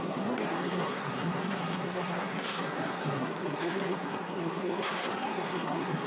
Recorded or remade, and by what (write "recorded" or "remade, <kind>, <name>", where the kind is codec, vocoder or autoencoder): remade, codec, SNAC